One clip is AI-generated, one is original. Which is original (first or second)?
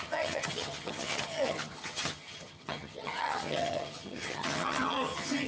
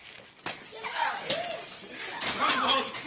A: second